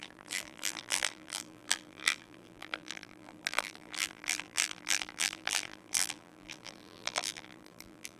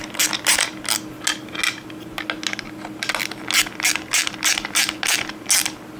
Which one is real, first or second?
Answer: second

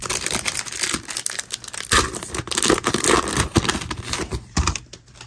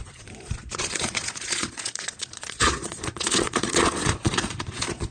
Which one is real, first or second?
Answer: first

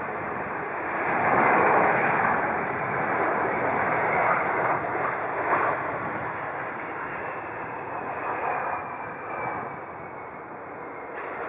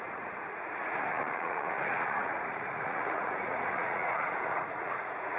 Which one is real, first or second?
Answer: first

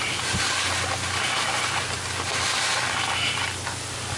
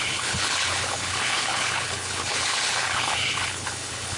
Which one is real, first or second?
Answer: first